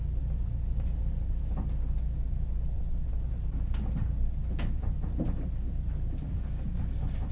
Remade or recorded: recorded